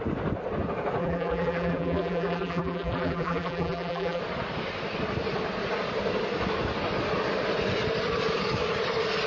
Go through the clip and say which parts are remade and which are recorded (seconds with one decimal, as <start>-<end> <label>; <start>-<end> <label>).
0.0-1.0 recorded; 1.0-4.2 remade; 4.2-9.3 recorded